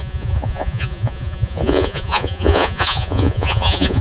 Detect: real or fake fake